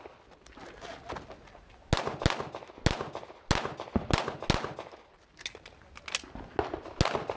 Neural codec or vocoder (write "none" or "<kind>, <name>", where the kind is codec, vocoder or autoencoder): none